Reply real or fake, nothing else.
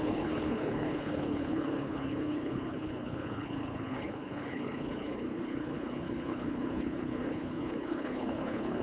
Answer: fake